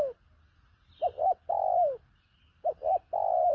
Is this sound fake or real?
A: real